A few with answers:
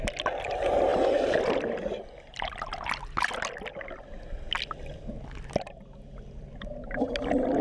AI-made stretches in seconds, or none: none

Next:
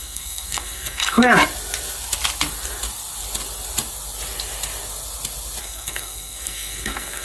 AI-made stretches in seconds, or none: 0.0-1.3 (codec, SNAC); 5.6-7.2

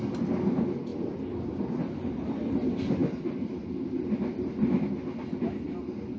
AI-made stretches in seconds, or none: none

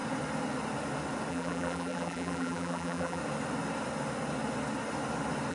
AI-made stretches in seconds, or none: 1.3-3.2 (vocoder, BigVGAN v2)

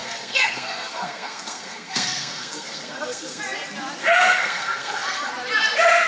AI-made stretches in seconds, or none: 0.0-3.4 (codec, SNAC); 4.0-5.3

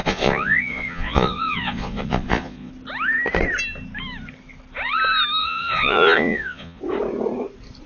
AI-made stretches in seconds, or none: 0.0-2.7 (vocoder, Vocos); 5.4-6.8

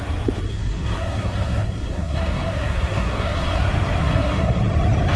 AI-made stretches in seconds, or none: 0.5-3.6 (codec, SNAC); 4.0-4.6